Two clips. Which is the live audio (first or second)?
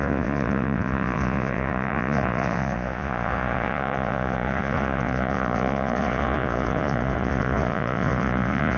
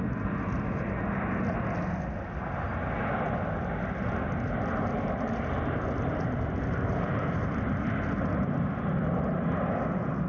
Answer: second